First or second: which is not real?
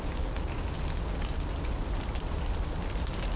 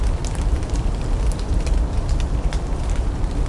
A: second